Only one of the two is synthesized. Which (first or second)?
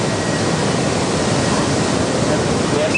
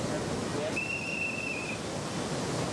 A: first